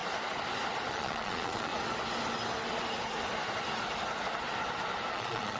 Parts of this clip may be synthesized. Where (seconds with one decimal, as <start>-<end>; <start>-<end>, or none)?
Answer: 0.9-1.7; 5.1-5.6